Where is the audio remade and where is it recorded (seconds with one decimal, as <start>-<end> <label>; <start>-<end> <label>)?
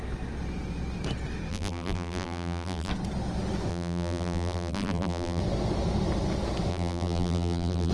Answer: 0.0-1.5 recorded; 1.5-2.9 remade; 2.9-3.7 recorded; 3.7-5.4 remade; 5.4-6.7 recorded; 6.7-7.9 remade